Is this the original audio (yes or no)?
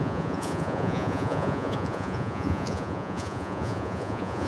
no